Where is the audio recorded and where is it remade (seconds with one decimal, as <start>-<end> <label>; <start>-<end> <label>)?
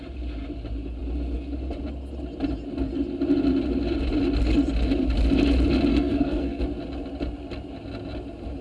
0.0-5.9 recorded; 5.9-6.6 remade; 6.6-8.6 recorded